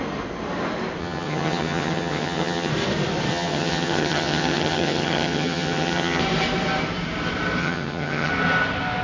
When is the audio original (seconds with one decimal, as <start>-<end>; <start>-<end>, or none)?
0.0-1.0; 2.7-3.3; 6.2-7.6; 8.3-9.0